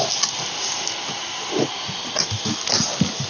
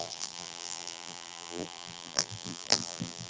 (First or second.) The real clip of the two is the first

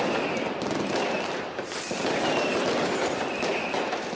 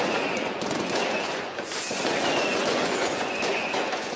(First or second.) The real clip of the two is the first